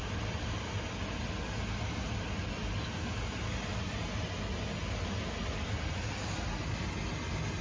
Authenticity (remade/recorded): recorded